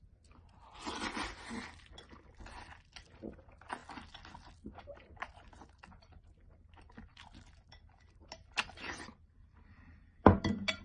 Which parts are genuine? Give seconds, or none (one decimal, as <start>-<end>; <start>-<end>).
0.0-10.8

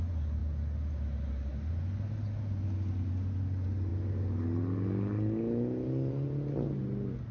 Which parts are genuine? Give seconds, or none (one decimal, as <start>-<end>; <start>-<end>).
0.0-7.3

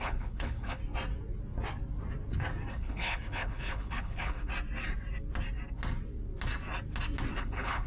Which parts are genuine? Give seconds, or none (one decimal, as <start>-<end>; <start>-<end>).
0.8-2.7; 4.5-7.4

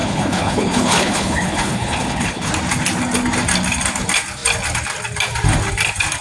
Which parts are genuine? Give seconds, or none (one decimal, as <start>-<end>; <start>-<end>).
2.5-6.2

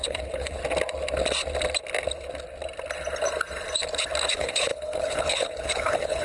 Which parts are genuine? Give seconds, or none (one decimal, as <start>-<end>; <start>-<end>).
0.6-4.3